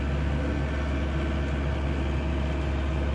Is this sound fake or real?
real